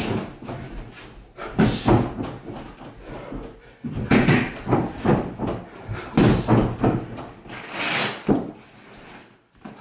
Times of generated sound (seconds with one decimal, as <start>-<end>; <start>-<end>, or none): none